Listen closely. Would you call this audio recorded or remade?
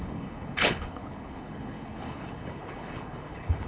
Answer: remade